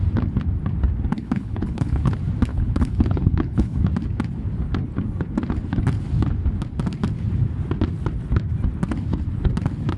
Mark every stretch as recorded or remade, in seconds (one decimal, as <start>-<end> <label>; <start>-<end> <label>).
0.0-1.1 recorded; 1.1-2.1 remade; 2.1-2.5 recorded; 2.5-3.8 remade; 3.8-10.0 recorded